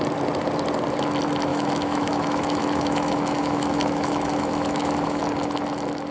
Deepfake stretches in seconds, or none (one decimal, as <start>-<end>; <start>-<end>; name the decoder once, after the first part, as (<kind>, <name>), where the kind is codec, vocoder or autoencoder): 1.5-5.2 (autoencoder, DAC-VAE)